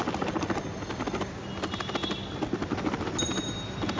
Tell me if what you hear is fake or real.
real